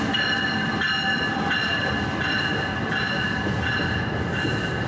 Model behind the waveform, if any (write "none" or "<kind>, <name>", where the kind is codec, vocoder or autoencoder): none